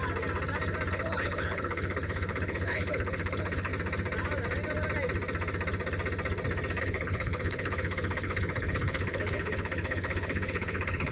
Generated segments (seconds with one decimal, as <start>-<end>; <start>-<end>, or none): 0.9-3.7; 6.8-11.1